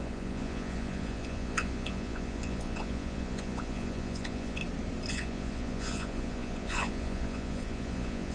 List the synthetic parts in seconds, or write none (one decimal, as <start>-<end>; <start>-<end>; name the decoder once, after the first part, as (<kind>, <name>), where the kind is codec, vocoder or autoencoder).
0.0-4.6 (vocoder, Vocos); 5.1-8.3